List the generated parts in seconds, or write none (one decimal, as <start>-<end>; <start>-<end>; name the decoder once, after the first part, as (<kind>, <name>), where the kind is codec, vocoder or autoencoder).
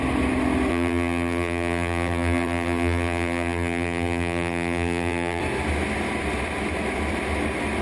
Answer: 0.7-5.4 (vocoder, BigVGAN v2)